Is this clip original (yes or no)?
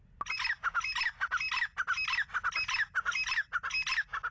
yes